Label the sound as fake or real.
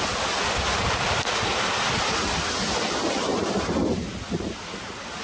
real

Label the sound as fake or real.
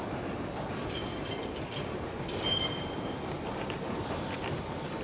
real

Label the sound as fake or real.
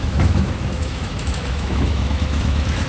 fake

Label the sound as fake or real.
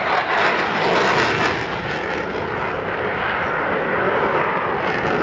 real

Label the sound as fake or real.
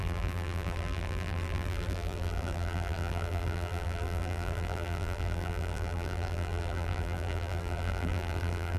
fake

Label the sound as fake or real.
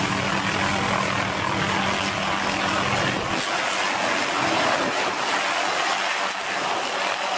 real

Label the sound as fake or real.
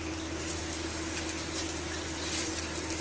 real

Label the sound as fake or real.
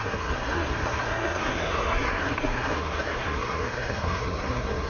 fake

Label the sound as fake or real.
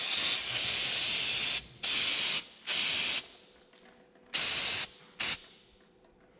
real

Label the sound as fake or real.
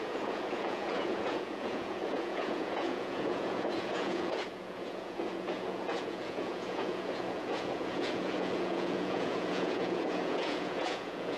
fake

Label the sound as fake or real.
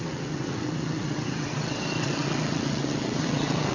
fake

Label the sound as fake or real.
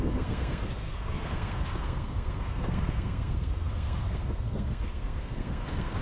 fake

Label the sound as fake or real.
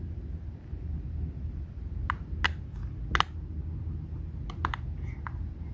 real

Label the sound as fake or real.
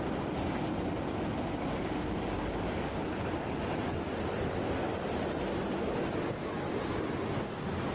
real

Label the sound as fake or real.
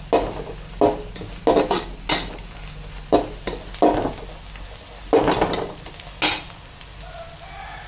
real